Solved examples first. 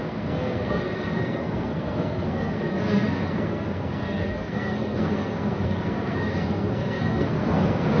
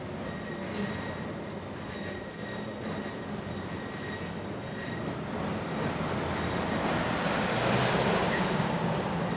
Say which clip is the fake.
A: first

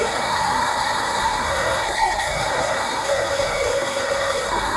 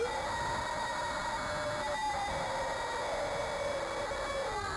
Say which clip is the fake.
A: first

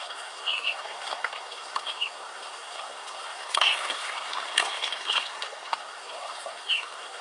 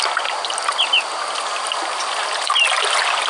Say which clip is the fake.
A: first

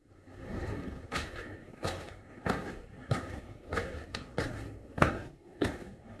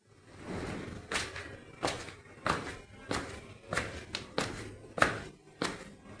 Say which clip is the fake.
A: first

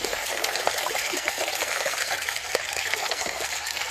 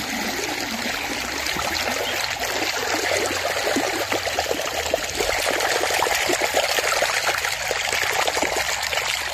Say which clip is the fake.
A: first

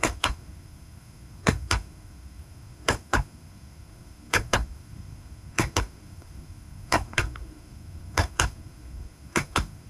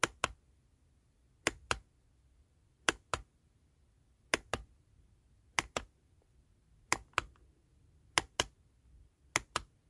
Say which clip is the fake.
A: first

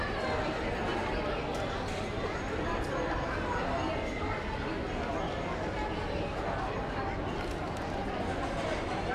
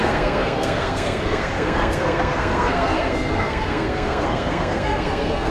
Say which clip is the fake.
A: second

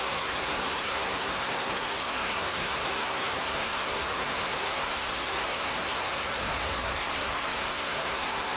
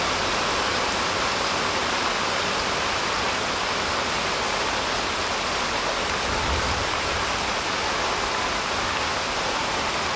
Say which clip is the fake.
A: first